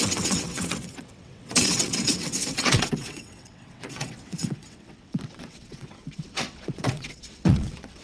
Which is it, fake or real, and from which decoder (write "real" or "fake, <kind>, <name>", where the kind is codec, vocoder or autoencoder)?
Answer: fake, vocoder, WaveNeXt